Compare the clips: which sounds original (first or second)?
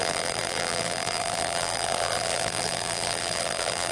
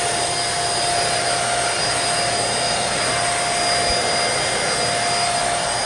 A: second